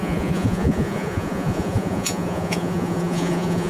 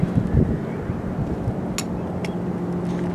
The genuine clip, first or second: second